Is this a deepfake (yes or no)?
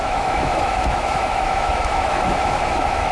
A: yes